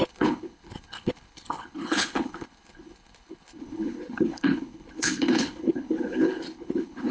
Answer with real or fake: fake